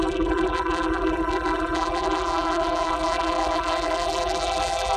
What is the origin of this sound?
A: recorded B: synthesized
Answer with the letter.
B